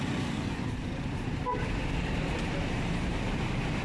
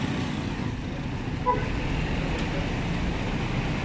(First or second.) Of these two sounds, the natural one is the second